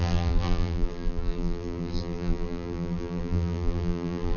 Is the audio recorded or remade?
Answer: remade